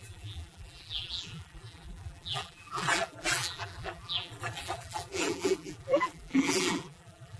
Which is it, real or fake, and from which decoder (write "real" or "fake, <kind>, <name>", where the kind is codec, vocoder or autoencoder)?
fake, vocoder, BigVGAN v2